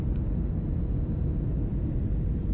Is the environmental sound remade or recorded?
remade